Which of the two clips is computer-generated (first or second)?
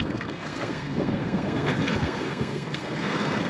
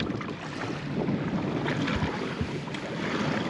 first